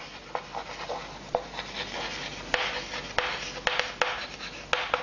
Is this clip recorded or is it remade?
recorded